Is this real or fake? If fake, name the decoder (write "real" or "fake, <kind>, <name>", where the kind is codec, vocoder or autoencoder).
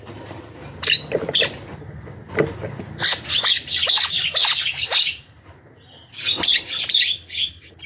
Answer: fake, vocoder, BigVGAN v2